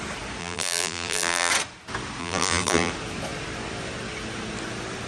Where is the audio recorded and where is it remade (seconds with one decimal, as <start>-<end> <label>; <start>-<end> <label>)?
0.0-0.4 recorded; 0.4-1.5 remade; 1.5-2.2 recorded; 2.2-2.9 remade; 2.9-5.1 recorded